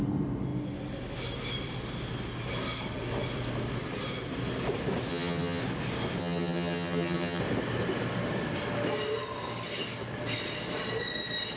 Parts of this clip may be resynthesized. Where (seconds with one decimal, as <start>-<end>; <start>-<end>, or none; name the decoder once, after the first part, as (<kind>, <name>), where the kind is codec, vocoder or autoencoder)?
5.1-5.6 (vocoder, HiFi-GAN); 6.2-7.4